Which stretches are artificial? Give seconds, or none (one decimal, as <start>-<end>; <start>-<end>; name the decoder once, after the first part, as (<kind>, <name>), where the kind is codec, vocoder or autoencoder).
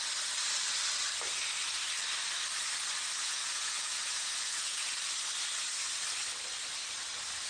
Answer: 3.2-4.9 (vocoder, Vocos)